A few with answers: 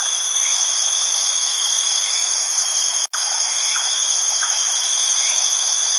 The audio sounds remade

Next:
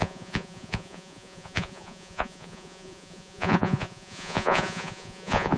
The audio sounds remade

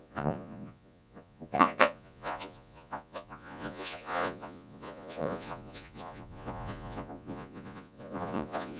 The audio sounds remade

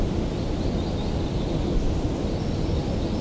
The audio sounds recorded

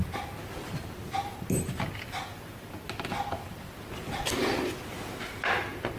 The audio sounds recorded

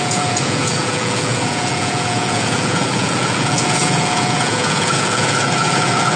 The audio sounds remade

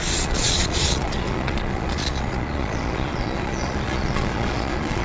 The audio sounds remade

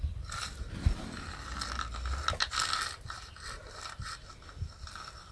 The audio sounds recorded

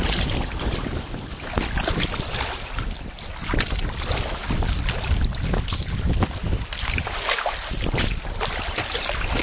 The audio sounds recorded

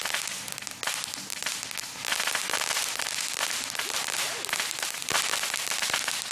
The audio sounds recorded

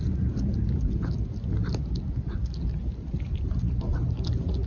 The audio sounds recorded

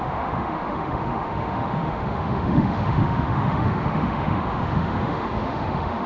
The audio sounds remade